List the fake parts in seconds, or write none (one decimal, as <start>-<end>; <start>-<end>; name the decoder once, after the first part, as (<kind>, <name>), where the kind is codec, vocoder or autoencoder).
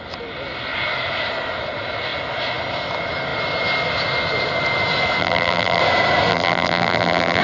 5.2-5.8 (vocoder, BigVGAN v2); 6.3-7.4